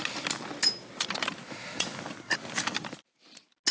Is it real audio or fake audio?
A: real